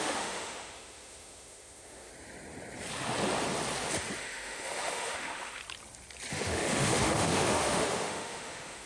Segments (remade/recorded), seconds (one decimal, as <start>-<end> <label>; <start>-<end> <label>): 0.0-2.1 remade; 2.1-4.2 recorded; 4.2-5.6 remade; 5.6-6.3 recorded; 6.3-8.9 remade